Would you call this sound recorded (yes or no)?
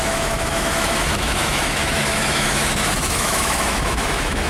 no